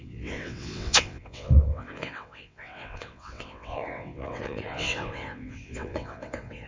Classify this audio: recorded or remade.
remade